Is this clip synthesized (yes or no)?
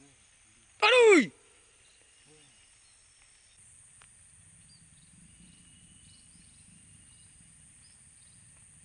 no